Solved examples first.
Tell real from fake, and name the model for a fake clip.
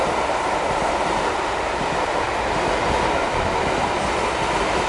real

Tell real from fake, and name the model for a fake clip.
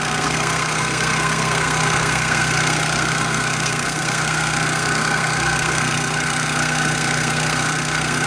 fake, codec, SNAC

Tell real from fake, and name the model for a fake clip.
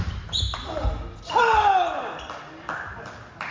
real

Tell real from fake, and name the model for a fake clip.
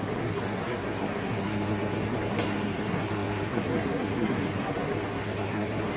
fake, codec, SNAC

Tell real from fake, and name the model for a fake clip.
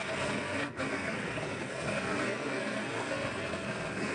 fake, codec, SNAC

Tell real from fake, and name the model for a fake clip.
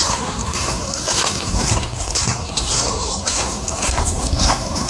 fake, codec, SNAC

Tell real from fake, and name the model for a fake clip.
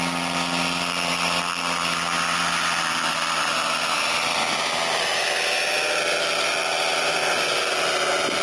real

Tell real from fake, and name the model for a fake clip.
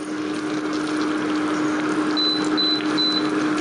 real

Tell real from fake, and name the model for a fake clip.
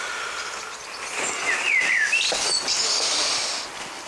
real